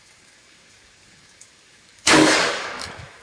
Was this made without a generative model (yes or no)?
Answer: no